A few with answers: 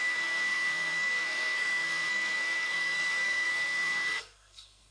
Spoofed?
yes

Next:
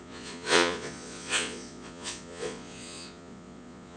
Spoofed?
yes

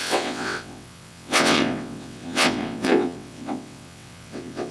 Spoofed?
yes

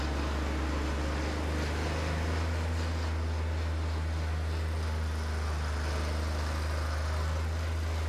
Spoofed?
no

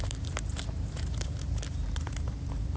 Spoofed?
yes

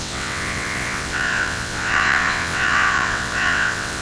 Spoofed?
yes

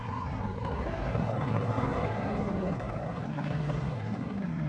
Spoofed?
yes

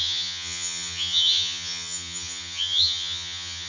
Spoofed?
yes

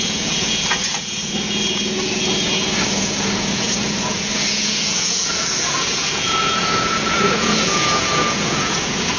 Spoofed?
yes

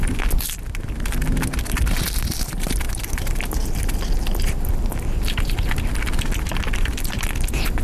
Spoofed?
no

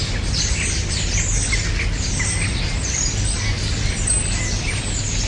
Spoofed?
no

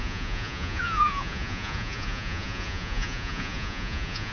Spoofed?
yes